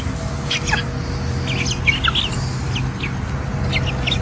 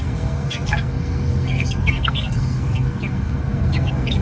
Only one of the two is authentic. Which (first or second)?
first